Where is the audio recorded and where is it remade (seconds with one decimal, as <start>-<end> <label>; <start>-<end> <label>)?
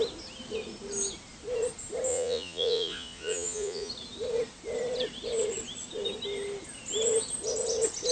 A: 0.0-2.1 recorded; 2.1-3.9 remade; 3.9-8.1 recorded